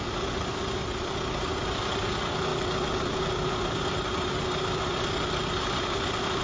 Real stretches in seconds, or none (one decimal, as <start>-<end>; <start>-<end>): 0.0-2.5